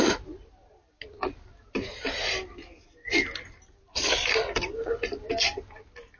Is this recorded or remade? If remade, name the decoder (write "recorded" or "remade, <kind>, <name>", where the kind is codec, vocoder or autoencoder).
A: recorded